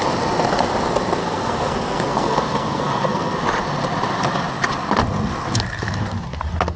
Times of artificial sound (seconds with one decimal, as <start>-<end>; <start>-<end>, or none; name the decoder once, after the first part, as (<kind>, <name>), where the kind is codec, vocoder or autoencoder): 1.2-3.4 (codec, SNAC)